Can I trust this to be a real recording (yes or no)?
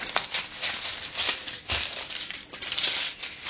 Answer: yes